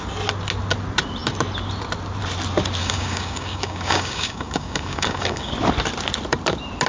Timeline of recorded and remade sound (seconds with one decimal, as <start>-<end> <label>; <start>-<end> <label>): 0.0-2.8 recorded; 2.8-5.5 remade; 5.5-6.9 recorded